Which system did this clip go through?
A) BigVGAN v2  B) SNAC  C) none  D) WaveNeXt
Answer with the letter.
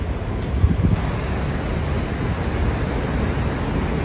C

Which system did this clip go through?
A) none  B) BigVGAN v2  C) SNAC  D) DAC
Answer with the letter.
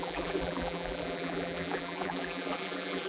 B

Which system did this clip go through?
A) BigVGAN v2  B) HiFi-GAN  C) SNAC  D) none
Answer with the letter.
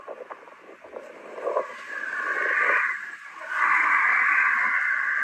A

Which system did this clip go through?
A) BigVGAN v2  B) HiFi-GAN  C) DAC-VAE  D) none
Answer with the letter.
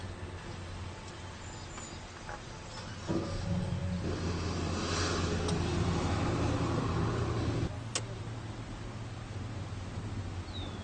D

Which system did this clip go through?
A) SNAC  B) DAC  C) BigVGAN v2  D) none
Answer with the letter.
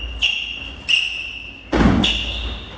D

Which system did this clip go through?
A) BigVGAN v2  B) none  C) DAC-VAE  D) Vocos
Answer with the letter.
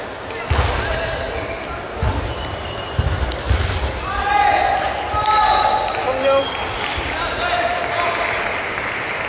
B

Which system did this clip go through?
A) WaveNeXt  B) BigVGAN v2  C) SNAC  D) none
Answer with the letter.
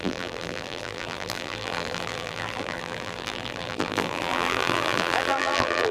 B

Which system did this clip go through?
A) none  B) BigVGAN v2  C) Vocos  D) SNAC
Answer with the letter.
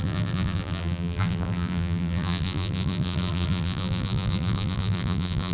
B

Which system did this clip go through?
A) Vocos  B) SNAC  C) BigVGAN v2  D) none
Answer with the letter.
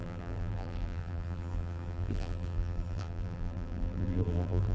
C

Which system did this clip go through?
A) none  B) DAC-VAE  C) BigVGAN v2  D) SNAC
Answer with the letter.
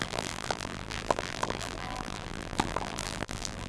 C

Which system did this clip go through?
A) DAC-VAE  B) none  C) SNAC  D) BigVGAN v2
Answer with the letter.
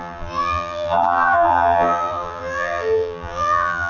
D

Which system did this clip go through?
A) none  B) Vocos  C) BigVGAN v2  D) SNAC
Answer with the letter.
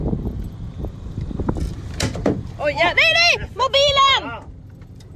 A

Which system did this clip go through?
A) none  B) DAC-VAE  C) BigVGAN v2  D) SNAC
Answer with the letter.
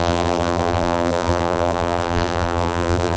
C